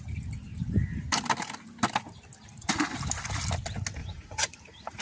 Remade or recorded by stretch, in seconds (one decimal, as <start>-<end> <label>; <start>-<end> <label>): 0.0-4.0 recorded; 4.0-5.0 remade